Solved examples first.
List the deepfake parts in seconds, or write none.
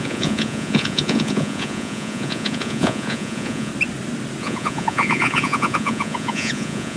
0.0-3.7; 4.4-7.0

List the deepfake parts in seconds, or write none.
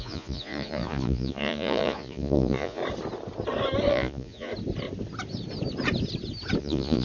0.0-2.8; 3.9-4.5; 6.6-7.0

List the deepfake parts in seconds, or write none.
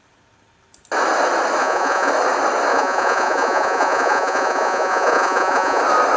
1.6-2.1; 2.7-5.8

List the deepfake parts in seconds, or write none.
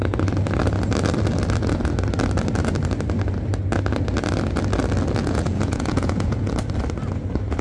5.2-6.5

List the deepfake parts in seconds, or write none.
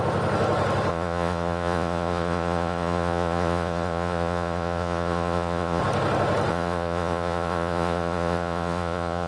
0.9-5.8; 6.5-9.3